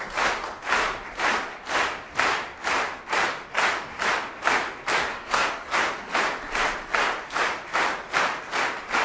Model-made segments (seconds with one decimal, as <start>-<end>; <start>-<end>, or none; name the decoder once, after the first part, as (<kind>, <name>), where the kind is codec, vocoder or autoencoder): 5.1-5.8 (codec, SNAC)